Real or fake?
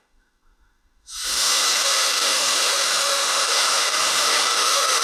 fake